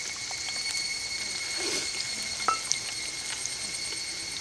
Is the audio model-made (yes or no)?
no